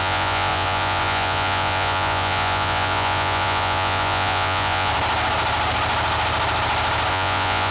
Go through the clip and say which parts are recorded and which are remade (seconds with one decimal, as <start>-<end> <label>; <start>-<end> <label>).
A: 0.0-4.9 remade; 4.9-7.1 recorded; 7.1-7.7 remade